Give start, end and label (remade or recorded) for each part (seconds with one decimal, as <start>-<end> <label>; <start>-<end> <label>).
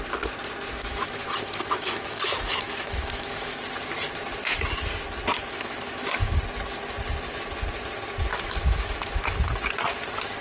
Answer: 0.0-0.7 recorded; 0.7-3.6 remade; 3.6-5.3 recorded; 5.3-6.4 remade; 6.4-8.3 recorded; 8.3-9.4 remade; 9.4-10.4 recorded